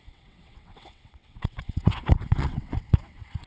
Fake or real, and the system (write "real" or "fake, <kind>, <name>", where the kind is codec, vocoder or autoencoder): fake, vocoder, WaveNeXt